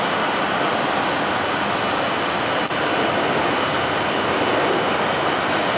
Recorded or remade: recorded